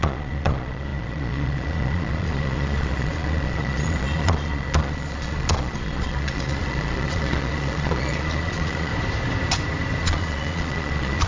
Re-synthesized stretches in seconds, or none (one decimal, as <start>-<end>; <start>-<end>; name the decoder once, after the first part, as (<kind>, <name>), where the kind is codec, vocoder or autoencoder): 0.0-8.9 (vocoder, Vocos); 10.0-11.3